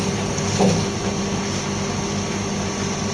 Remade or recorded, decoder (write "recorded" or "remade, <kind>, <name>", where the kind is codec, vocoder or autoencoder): recorded